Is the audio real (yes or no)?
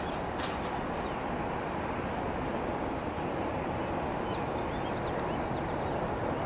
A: yes